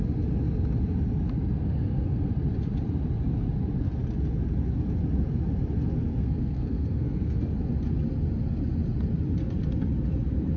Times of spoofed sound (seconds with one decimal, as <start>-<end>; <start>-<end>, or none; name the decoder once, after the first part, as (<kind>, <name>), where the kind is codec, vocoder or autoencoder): 1.6-2.3 (codec, SNAC); 6.2-7.5